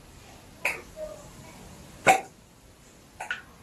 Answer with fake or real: fake